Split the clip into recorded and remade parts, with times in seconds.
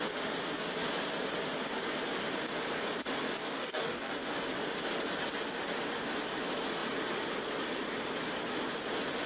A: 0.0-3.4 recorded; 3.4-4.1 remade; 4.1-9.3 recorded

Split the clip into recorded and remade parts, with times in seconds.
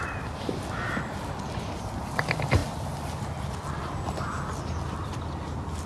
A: 0.0-5.9 recorded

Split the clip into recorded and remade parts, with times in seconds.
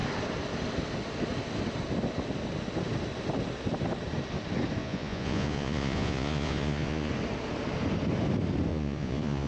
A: 0.0-4.8 recorded; 4.8-7.1 remade; 7.1-8.7 recorded; 8.7-9.5 remade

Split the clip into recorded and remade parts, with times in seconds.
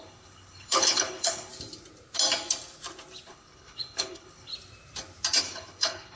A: 0.0-1.5 remade; 1.5-3.3 recorded; 3.3-4.5 remade; 4.5-5.4 recorded; 5.4-6.2 remade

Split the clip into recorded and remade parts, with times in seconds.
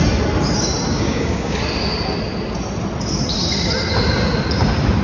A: 0.0-0.9 recorded; 0.9-1.6 remade; 1.6-5.0 recorded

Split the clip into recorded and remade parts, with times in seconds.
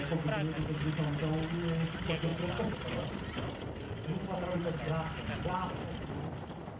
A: 0.0-6.8 recorded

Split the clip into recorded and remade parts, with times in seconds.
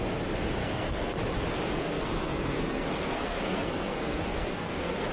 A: 0.0-0.6 recorded; 0.6-1.2 remade; 1.2-1.8 recorded; 1.8-5.1 remade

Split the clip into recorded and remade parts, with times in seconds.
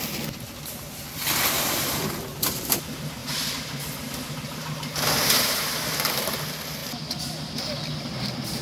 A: 0.0-8.6 recorded